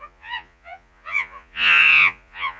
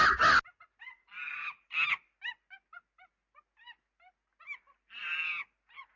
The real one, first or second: second